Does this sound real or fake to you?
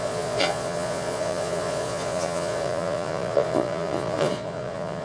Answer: fake